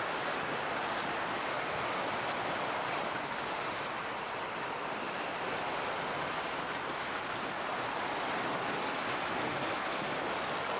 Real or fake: real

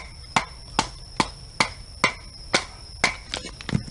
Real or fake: real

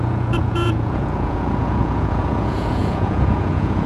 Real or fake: fake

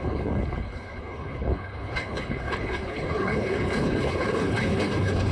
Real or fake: fake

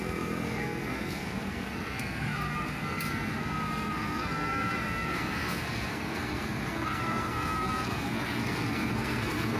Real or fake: fake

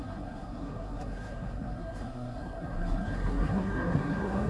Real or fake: fake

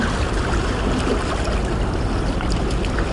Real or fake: fake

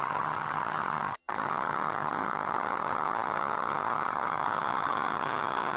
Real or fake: fake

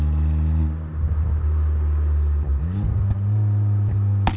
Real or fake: real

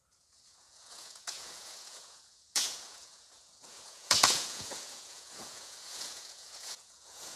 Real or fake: fake